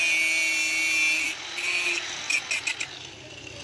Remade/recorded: recorded